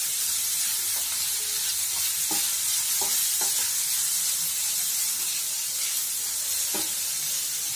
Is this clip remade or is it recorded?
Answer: recorded